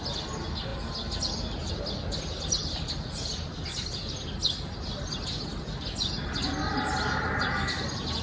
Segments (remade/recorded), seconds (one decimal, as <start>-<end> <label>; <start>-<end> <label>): 0.0-8.2 recorded